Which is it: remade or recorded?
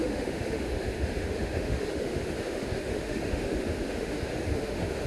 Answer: remade